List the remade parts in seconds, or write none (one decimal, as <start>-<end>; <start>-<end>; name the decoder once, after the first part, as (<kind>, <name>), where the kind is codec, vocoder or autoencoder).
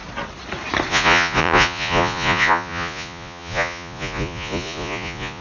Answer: 0.9-5.4 (vocoder, Vocos)